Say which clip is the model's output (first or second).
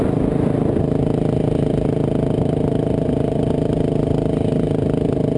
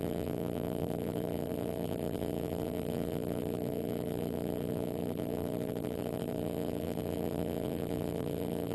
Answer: second